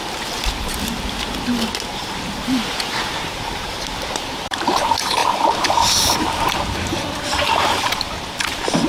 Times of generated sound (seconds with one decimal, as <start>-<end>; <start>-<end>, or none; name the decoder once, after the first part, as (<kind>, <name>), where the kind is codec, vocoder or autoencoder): 3.0-8.9 (vocoder, BigVGAN v2)